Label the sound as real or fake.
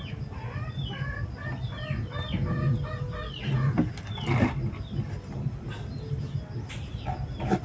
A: real